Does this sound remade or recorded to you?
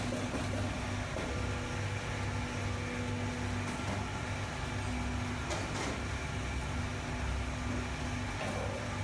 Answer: recorded